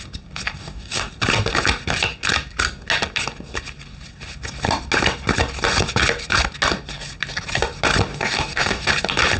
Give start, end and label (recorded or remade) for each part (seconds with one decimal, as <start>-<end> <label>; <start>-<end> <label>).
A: 0.0-0.6 recorded; 0.6-1.1 remade; 1.1-8.1 recorded; 8.1-8.9 remade; 8.9-9.4 recorded